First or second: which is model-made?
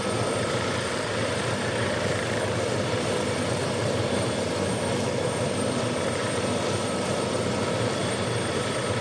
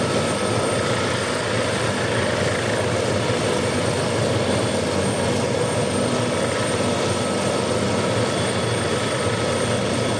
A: first